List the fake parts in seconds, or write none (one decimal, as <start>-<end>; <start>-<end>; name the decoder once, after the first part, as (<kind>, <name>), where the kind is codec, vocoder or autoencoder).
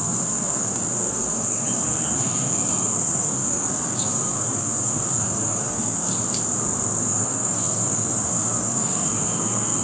0.0-6.1 (codec, SNAC); 7.0-9.8